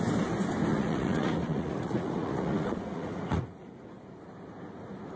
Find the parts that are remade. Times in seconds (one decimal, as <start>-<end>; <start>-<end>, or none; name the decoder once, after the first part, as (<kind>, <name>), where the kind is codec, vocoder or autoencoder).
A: 0.7-3.8 (vocoder, Vocos)